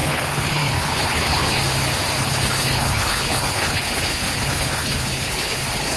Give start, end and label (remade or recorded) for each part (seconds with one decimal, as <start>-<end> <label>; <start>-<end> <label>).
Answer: 0.0-1.6 remade; 1.6-2.2 recorded; 2.2-6.0 remade